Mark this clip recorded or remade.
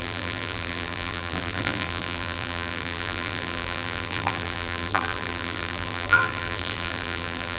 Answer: remade